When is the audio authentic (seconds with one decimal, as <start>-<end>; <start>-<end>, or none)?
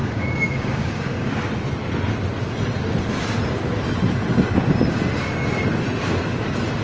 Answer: 1.4-6.8